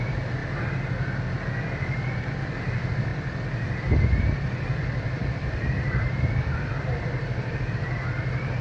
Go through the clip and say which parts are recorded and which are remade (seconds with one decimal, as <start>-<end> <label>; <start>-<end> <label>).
0.0-8.6 remade